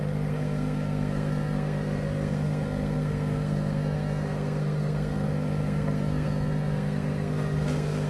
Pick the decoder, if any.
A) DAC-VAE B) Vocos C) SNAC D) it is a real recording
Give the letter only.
C